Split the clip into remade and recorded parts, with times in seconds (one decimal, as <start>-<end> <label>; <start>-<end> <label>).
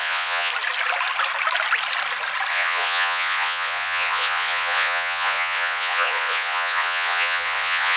0.0-0.5 remade; 0.5-2.5 recorded; 2.5-8.0 remade